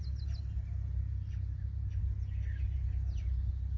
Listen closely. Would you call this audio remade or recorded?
recorded